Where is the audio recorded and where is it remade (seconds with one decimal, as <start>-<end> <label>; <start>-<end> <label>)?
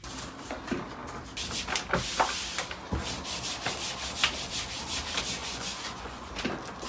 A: 0.0-5.4 recorded; 5.4-6.3 remade; 6.3-6.9 recorded